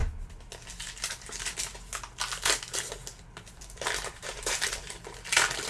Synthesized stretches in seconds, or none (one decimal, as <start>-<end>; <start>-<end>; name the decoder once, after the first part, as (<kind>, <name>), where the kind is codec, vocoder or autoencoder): 0.7-1.7 (vocoder, BigVGAN v2); 3.4-4.8